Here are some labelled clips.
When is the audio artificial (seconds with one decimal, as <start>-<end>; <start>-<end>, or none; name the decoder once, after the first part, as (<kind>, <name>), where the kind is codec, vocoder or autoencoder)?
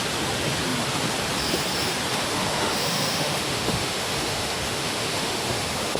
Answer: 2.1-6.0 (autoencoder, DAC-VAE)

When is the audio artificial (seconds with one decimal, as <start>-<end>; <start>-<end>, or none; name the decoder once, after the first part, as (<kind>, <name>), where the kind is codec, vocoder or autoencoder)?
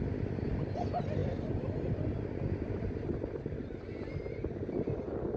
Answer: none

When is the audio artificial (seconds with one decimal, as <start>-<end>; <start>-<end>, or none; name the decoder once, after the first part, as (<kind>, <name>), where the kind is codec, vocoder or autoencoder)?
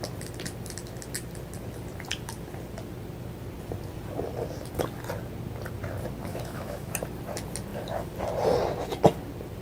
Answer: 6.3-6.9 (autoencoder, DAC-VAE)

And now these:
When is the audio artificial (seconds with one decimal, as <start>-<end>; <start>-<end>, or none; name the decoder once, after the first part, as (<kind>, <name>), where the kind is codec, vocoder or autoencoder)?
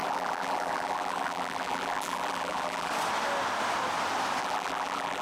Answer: 0.0-2.9 (vocoder, BigVGAN v2); 4.4-5.2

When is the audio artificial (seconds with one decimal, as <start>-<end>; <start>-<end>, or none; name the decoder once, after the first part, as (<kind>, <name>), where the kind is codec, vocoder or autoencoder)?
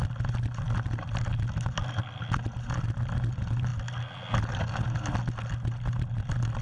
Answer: none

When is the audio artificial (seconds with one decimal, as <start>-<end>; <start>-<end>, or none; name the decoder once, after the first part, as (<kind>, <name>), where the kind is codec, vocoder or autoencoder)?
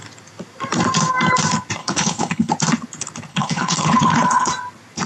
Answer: 1.8-2.5 (codec, HILCodec); 3.3-4.5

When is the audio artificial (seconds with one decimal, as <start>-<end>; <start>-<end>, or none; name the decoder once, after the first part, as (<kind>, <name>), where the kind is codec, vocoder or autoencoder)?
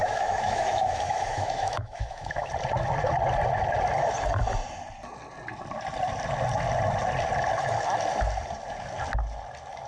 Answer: 0.0-2.5 (autoencoder, DAC-VAE)